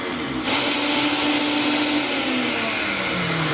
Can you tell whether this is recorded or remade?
recorded